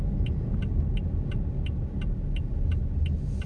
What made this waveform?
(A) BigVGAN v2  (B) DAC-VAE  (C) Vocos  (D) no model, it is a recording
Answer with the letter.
D